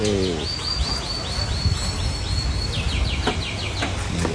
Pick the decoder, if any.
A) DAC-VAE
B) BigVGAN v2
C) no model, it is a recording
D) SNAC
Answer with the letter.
C